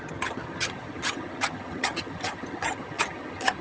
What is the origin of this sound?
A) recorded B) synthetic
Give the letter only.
B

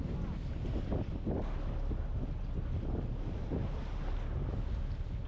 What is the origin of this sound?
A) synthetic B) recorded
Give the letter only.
B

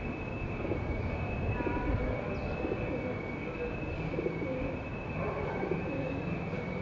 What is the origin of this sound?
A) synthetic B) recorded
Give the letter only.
B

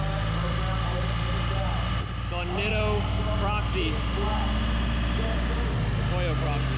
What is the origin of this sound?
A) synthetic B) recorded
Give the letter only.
B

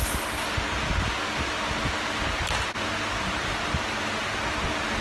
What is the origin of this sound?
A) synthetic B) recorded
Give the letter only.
B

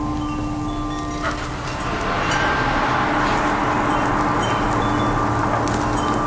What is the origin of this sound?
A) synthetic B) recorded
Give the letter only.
B